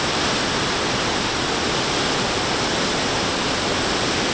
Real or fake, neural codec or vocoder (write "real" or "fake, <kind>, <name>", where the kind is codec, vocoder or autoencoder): real